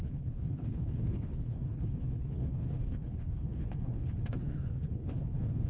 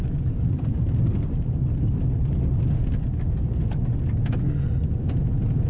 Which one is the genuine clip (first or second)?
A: second